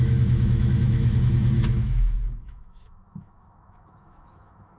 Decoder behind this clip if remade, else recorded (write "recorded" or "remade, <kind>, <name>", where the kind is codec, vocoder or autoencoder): remade, autoencoder, DAC-VAE